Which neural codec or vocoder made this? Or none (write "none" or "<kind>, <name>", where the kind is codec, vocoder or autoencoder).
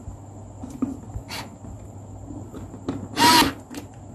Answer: none